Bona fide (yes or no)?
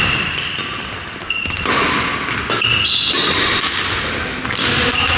yes